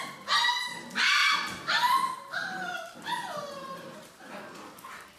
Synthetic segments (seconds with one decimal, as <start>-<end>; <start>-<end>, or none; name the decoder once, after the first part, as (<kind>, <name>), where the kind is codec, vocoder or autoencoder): 1.2-4.3 (vocoder, BigVGAN v2)